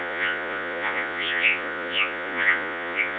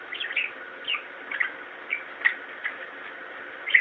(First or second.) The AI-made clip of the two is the first